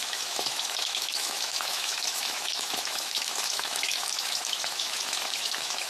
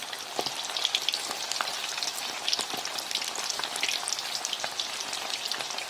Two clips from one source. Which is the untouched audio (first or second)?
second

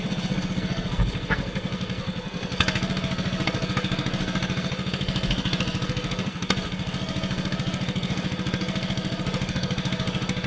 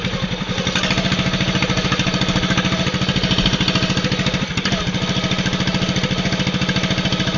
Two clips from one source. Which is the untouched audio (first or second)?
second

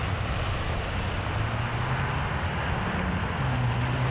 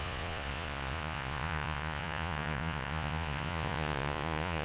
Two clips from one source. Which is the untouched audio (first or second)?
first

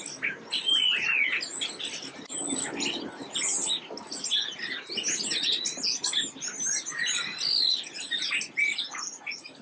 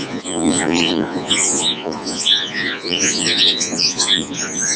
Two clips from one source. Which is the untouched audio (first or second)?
first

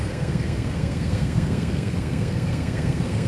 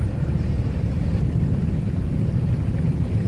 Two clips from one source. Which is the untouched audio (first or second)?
second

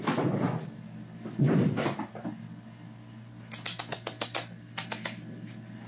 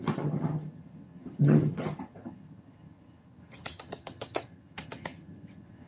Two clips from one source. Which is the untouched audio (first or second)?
first